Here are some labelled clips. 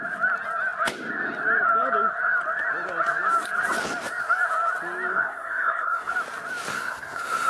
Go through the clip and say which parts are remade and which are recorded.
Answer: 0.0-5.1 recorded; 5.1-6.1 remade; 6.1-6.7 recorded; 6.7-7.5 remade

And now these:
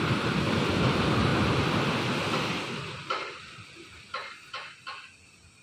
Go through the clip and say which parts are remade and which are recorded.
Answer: 0.0-5.6 recorded

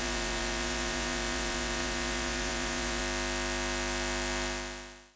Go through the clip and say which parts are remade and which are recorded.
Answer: 0.0-3.0 remade; 3.0-5.2 recorded